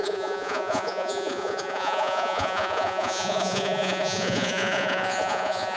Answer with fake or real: fake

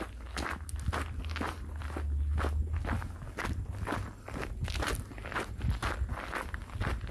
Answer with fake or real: real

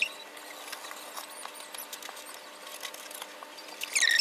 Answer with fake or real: real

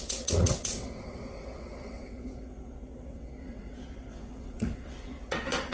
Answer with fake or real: fake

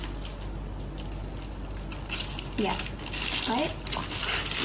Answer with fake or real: real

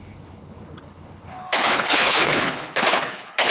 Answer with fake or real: fake